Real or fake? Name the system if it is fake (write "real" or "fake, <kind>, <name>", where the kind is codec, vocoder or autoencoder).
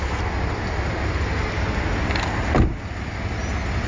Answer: real